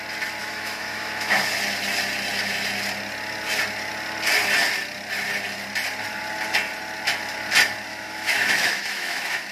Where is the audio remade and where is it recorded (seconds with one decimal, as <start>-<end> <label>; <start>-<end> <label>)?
0.0-0.4 recorded; 0.4-1.5 remade; 1.5-7.9 recorded; 7.9-9.5 remade